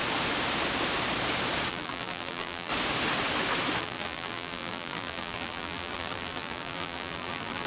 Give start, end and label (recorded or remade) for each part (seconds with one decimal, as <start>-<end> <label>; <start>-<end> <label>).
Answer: 0.0-1.7 recorded; 1.7-2.7 remade; 2.7-3.8 recorded; 3.8-7.7 remade